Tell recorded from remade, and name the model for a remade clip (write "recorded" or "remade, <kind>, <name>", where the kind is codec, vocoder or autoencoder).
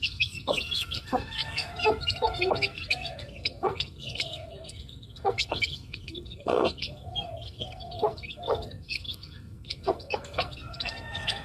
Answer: remade, codec, SNAC